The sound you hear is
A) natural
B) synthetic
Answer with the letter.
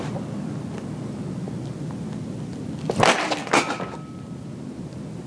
A